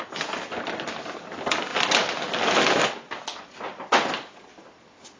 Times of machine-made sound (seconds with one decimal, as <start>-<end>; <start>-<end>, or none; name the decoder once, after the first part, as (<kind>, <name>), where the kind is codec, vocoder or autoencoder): none